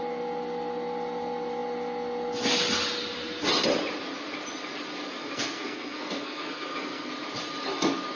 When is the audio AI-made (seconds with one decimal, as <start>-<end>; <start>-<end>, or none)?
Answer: 5.2-7.1